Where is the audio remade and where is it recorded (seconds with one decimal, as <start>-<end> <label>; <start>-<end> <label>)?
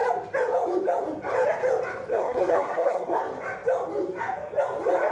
0.0-2.1 recorded; 2.1-3.2 remade; 3.2-5.1 recorded